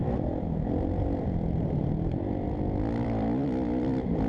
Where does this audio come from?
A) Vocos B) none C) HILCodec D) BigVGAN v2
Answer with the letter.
D